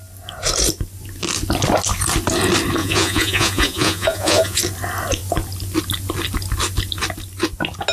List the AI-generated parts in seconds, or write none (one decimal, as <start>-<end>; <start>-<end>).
2.8-4.6